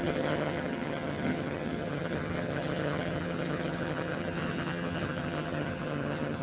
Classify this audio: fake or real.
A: fake